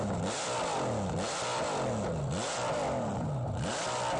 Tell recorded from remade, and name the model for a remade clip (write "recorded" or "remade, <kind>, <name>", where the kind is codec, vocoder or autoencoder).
recorded